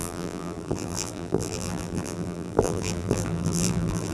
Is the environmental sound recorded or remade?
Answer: remade